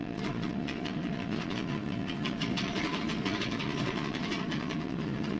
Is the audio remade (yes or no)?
yes